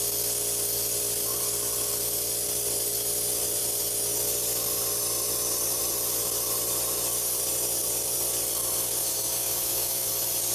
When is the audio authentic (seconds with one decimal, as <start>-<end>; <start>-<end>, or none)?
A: 0.0-9.0; 10.1-10.5